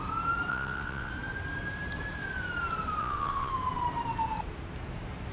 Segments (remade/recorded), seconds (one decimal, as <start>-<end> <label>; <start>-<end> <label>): 0.0-0.5 recorded; 0.5-1.1 remade; 1.1-3.0 recorded; 3.0-3.5 remade; 3.5-5.3 recorded